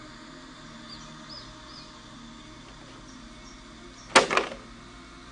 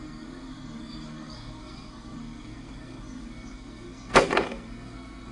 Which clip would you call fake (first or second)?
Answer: second